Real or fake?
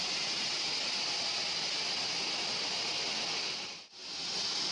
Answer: real